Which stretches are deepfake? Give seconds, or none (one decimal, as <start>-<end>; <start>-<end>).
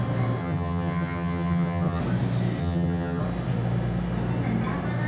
0.4-2.0; 2.6-3.2